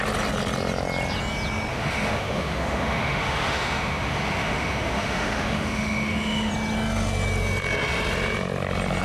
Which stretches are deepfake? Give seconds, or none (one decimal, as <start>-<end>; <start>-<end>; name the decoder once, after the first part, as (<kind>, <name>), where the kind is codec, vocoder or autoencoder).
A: 1.7-6.5 (autoencoder, DAC-VAE)